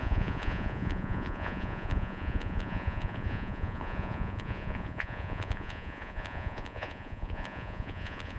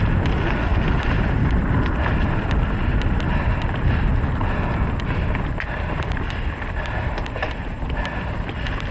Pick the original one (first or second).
second